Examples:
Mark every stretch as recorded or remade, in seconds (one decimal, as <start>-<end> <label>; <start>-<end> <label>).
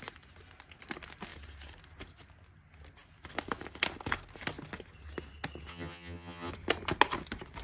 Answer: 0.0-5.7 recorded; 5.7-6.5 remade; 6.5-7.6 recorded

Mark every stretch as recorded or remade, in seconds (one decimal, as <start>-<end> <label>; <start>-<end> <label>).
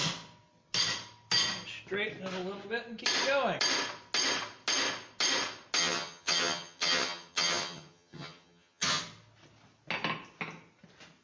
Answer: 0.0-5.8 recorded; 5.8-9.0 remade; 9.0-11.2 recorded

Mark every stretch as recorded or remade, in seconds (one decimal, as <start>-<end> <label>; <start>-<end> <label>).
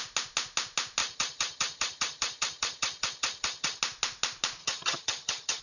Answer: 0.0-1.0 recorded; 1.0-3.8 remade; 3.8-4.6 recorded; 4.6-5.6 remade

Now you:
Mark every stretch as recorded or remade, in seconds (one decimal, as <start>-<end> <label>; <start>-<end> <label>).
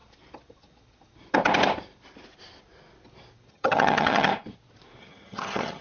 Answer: 0.0-3.5 recorded; 3.5-4.3 remade; 4.3-5.0 recorded; 5.0-5.8 remade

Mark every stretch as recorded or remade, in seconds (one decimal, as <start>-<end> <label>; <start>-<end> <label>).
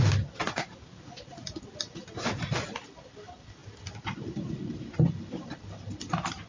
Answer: 0.0-6.5 recorded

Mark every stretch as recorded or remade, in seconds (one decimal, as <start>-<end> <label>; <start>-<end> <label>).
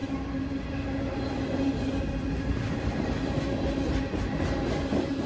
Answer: 0.0-5.3 recorded